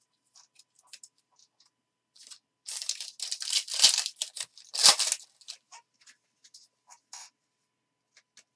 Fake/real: real